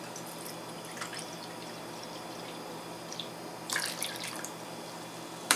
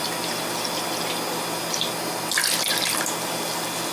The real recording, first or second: second